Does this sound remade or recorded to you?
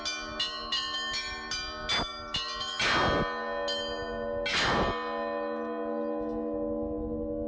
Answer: recorded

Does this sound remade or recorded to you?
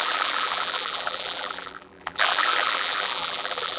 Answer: remade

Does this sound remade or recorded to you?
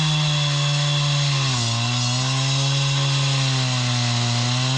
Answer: recorded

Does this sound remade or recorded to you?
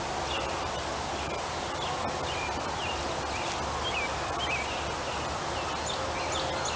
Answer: recorded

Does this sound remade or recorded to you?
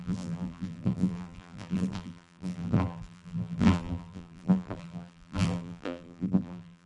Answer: remade